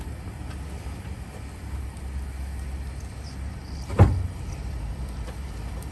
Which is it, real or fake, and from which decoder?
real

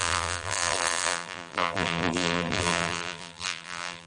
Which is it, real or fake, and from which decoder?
fake, vocoder, BigVGAN v2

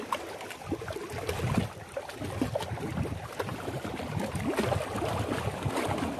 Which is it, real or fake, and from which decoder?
real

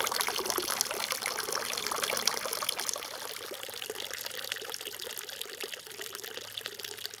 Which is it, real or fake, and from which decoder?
real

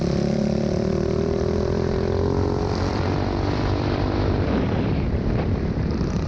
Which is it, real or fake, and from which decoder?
fake, vocoder, BigVGAN v2